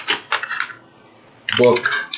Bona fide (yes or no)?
no